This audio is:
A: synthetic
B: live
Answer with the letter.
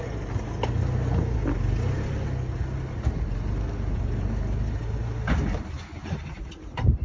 B